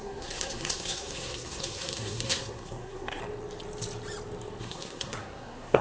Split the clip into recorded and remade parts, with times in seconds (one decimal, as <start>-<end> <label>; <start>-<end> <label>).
0.0-3.2 remade; 3.2-4.6 recorded; 4.6-5.8 remade